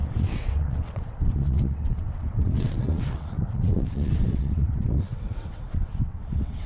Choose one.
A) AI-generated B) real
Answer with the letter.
A